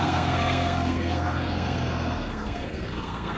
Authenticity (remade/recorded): remade